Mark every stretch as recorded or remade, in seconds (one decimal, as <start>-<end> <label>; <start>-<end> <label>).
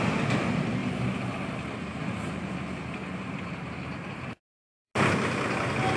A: 0.0-0.8 remade; 0.8-2.4 recorded; 2.4-4.9 remade; 4.9-6.0 recorded